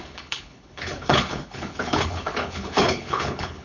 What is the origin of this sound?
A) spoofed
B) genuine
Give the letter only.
A